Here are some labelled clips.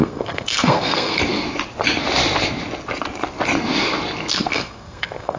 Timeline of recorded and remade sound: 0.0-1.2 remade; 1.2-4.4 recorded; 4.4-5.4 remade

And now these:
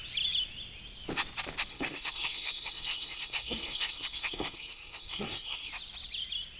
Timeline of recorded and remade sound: 0.0-1.7 recorded; 1.7-5.7 remade; 5.7-6.6 recorded

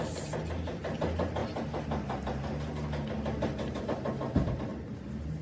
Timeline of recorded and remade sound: 0.0-5.4 recorded

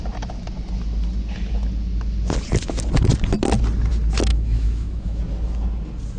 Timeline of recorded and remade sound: 0.0-4.3 recorded; 4.3-5.2 remade; 5.2-6.2 recorded